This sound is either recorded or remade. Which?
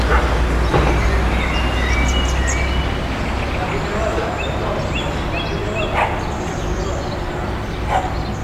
recorded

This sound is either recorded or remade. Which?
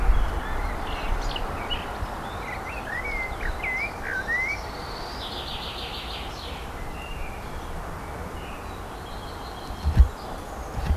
recorded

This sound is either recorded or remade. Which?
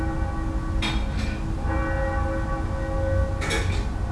recorded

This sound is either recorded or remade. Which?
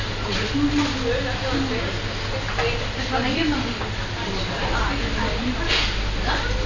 recorded